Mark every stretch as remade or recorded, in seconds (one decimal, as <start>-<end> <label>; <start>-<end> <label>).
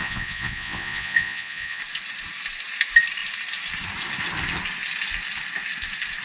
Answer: 0.0-1.8 remade; 1.8-6.2 recorded